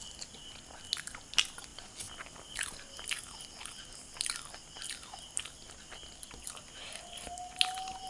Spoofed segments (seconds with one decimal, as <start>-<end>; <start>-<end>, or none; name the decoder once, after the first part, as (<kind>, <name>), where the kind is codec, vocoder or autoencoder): none